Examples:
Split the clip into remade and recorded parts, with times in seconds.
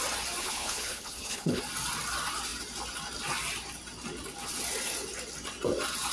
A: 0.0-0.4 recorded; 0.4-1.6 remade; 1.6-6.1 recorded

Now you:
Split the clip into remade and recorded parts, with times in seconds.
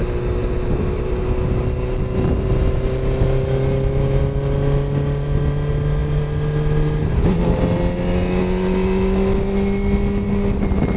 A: 0.0-11.0 recorded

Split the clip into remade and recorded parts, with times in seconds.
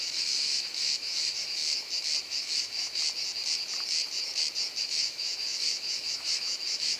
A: 0.0-1.6 remade; 1.6-2.2 recorded; 2.2-3.0 remade; 3.0-4.8 recorded; 4.8-7.0 remade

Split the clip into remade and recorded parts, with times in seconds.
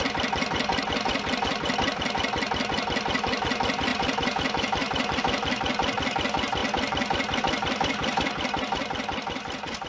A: 0.0-3.9 recorded; 3.9-5.2 remade; 5.2-9.9 recorded